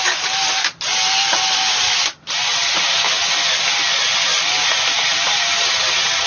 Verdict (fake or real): real